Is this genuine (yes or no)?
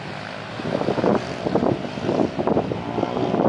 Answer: yes